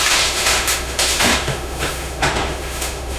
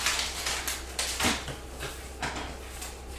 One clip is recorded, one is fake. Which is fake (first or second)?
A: first